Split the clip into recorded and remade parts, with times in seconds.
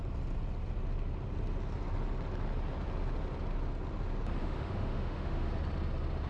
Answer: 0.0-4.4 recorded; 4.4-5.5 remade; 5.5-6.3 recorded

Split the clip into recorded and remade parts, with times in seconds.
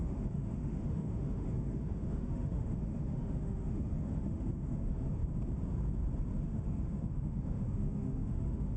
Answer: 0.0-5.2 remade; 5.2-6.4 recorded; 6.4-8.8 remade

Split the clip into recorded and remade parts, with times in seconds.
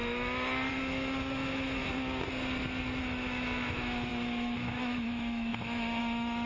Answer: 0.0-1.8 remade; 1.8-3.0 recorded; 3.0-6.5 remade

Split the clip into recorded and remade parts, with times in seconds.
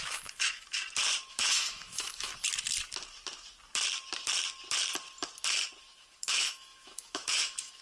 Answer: 0.0-0.8 remade; 0.8-1.3 recorded; 1.3-2.3 remade; 2.3-5.8 recorded; 5.8-7.8 remade